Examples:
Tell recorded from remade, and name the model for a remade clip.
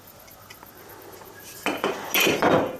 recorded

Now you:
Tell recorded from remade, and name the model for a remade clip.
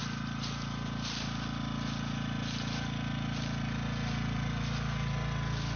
recorded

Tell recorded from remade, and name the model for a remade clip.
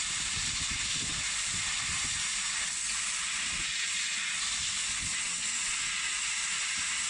recorded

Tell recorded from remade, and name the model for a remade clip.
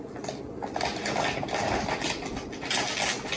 recorded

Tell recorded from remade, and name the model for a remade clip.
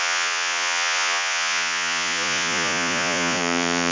remade, vocoder, Vocos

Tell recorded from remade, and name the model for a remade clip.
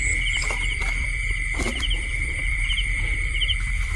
remade, vocoder, BigVGAN v2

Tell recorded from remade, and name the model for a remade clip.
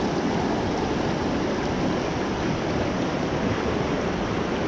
recorded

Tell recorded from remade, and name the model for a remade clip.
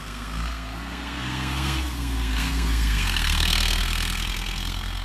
remade, codec, SNAC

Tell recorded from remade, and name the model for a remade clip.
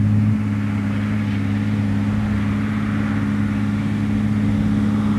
recorded